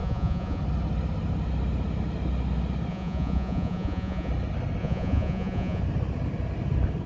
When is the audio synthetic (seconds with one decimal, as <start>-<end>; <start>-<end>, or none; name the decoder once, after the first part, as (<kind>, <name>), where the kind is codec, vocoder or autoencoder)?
0.0-0.6 (vocoder, Vocos); 2.9-4.3; 4.8-5.8